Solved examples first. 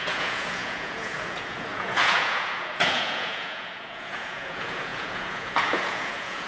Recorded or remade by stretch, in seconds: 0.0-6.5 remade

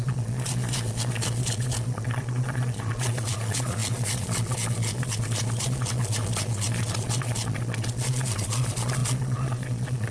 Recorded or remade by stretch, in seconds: 0.0-10.1 remade

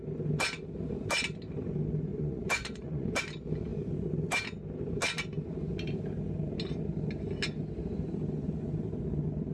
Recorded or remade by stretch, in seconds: 0.0-2.1 recorded; 2.1-3.2 remade; 3.2-9.5 recorded

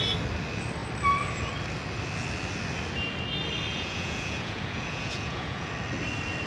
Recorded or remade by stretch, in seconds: 0.0-3.7 recorded; 3.7-5.7 remade; 5.7-6.5 recorded

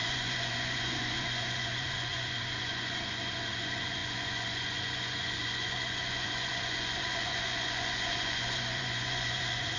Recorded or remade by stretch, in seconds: 0.0-9.8 remade

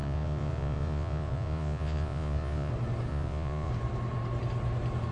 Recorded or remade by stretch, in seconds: 0.0-2.7 remade; 2.7-3.1 recorded; 3.1-3.7 remade; 3.7-5.1 recorded

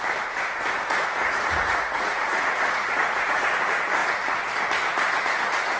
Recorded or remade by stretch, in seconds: 0.0-1.2 recorded; 1.2-3.6 remade; 3.6-5.8 recorded

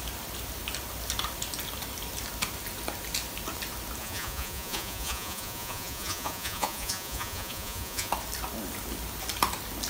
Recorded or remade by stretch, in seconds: 0.0-4.0 recorded; 4.0-8.1 remade; 8.1-9.9 recorded